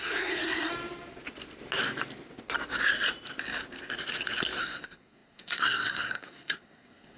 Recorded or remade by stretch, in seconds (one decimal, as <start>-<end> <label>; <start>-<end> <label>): 0.0-0.7 remade; 0.7-4.6 recorded; 4.6-7.2 remade